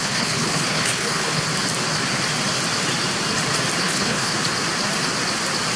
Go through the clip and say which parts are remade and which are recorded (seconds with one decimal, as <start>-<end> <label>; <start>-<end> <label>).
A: 0.0-1.5 remade; 1.5-3.8 recorded; 3.8-4.3 remade; 4.3-5.8 recorded